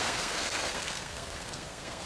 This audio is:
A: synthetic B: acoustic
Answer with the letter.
A